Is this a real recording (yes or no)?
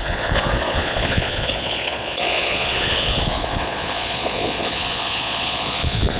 no